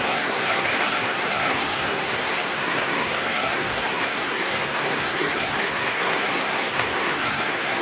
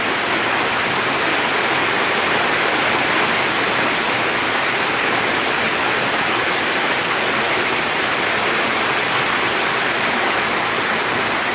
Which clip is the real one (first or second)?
second